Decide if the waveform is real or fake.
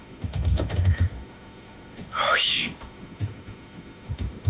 fake